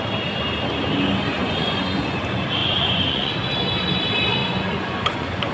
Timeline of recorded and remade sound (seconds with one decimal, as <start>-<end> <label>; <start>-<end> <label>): 0.0-1.4 recorded; 1.4-2.2 remade; 2.2-2.6 recorded; 2.6-3.3 remade; 3.3-4.4 recorded; 4.4-5.5 remade